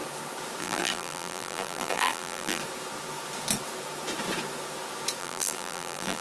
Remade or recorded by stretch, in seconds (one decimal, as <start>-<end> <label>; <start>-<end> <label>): 0.0-0.6 recorded; 0.6-2.6 remade; 2.6-5.2 recorded; 5.2-6.2 remade